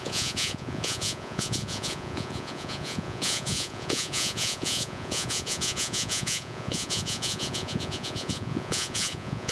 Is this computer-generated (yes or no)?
yes